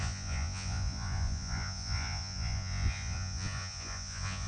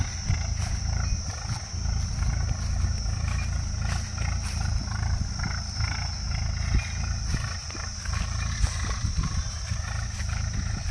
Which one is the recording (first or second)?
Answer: second